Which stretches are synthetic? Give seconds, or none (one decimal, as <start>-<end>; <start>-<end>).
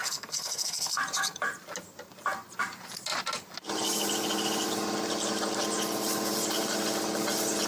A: 0.0-1.0